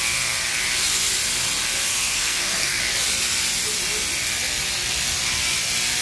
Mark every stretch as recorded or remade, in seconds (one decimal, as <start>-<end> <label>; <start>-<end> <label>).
0.0-1.9 recorded; 1.9-2.8 remade; 2.8-6.0 recorded

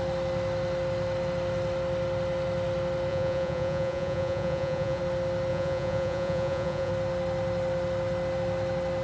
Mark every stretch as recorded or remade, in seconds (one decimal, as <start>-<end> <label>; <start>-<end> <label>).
0.0-3.1 recorded; 3.1-5.0 remade; 5.0-5.5 recorded; 5.5-6.9 remade; 6.9-9.0 recorded